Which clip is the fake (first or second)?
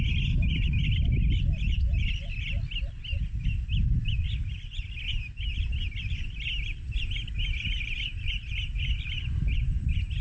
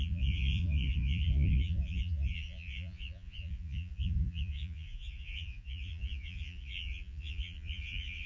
second